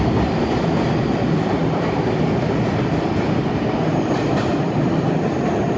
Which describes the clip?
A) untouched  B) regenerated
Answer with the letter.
B